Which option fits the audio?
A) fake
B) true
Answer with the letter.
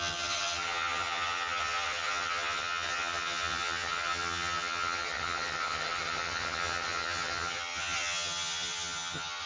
A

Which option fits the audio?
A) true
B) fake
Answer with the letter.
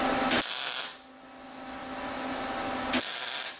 A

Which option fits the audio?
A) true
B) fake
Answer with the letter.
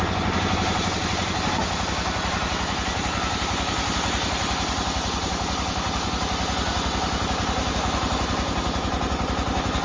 A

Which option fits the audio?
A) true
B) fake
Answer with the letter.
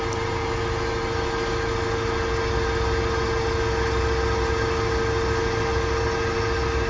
A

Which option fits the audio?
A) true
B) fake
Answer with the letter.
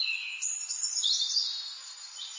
A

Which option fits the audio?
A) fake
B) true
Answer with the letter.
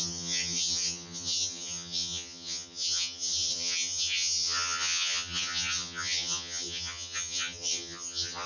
A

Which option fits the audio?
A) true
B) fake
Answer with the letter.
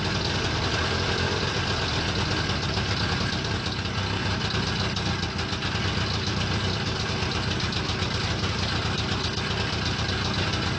A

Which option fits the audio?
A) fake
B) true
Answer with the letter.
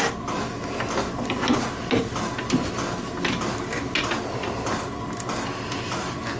B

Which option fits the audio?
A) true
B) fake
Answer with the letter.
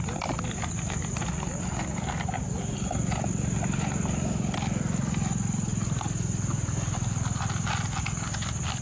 A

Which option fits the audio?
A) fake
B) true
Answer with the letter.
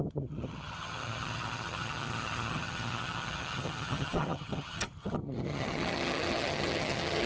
A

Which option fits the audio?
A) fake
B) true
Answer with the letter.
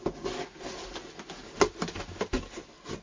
B